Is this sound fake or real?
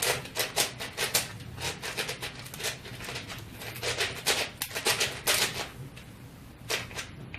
real